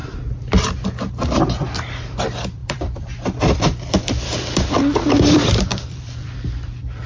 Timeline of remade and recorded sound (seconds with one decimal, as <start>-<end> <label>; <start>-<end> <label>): 0.0-2.0 recorded; 2.0-7.1 remade